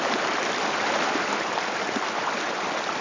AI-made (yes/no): no